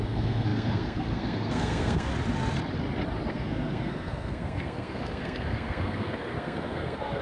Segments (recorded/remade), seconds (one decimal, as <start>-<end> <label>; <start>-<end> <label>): 0.0-2.1 remade; 2.1-3.3 recorded; 3.3-7.2 remade